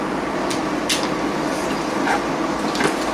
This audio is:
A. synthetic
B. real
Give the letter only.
B